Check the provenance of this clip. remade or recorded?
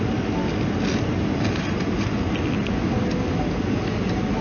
recorded